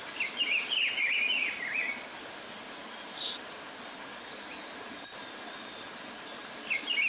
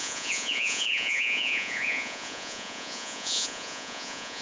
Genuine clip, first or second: first